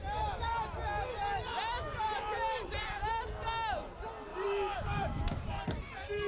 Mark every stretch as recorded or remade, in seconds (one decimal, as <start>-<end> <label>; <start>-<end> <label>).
0.0-4.3 recorded; 4.3-5.5 remade; 5.5-6.3 recorded